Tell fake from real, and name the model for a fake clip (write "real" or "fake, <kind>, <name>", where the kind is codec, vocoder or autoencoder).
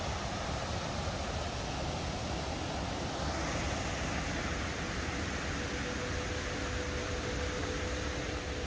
real